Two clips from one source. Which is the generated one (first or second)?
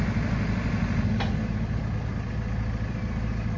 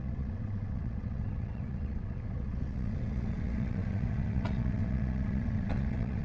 second